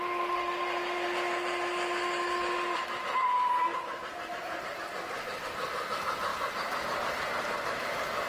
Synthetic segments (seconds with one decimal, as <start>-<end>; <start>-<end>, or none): none